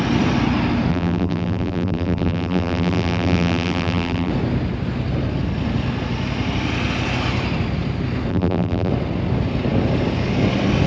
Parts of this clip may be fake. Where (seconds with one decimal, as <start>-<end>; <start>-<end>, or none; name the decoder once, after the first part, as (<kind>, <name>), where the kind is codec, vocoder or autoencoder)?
0.9-4.3 (vocoder, BigVGAN v2); 8.3-8.9